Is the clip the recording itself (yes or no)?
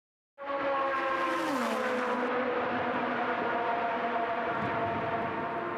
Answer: yes